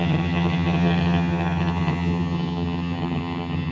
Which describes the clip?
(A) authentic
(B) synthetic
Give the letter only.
B